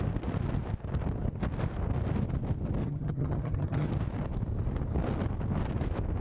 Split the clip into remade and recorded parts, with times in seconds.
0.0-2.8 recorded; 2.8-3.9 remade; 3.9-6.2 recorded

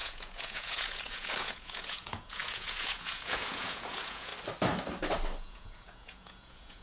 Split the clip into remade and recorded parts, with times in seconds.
0.0-4.3 remade; 4.3-5.4 recorded; 5.4-6.8 remade

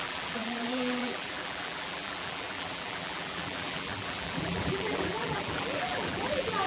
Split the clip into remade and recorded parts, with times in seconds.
0.0-6.7 remade